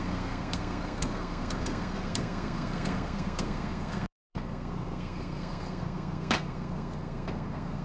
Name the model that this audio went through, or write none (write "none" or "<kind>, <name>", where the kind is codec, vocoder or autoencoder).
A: codec, SNAC